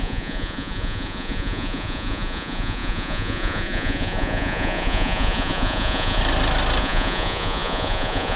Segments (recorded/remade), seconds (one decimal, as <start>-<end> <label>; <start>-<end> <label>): 0.0-6.2 remade; 6.2-6.8 recorded; 6.8-8.4 remade